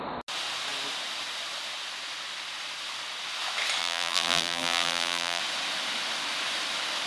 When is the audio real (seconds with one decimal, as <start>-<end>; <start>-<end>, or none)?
0.0-3.8; 5.4-7.1